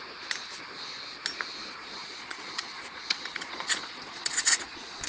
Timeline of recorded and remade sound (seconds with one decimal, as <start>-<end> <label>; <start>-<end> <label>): 0.0-1.6 recorded; 1.6-5.1 remade